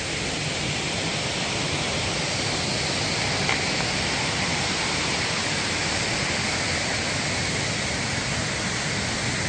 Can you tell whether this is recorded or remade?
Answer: recorded